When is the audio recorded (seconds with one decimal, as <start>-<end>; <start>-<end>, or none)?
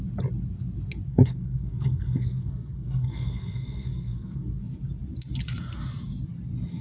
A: 0.0-1.1; 4.6-6.8